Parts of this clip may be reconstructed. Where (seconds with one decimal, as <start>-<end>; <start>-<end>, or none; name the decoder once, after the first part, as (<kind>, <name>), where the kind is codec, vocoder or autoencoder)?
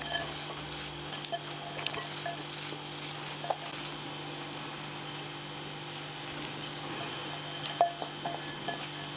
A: none